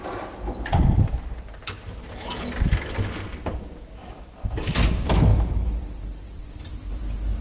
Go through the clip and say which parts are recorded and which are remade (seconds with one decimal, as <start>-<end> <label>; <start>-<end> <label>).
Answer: 0.0-5.3 recorded; 5.3-6.9 remade; 6.9-7.4 recorded